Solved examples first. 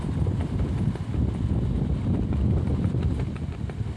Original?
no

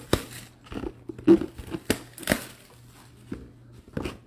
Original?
yes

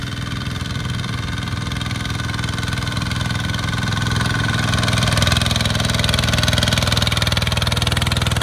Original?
yes